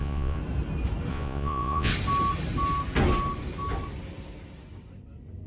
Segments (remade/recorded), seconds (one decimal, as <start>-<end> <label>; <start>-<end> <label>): 0.0-0.4 remade; 0.4-1.1 recorded; 1.1-1.9 remade; 1.9-5.5 recorded